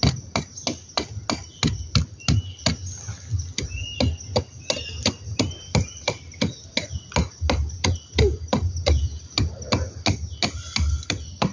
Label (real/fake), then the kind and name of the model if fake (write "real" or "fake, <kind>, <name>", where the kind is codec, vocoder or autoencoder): real